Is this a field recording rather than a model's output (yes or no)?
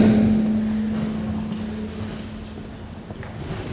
yes